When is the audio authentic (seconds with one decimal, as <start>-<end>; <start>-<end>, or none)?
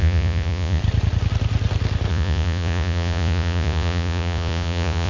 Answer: 0.8-2.1